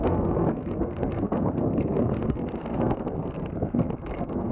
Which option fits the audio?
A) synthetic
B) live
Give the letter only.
A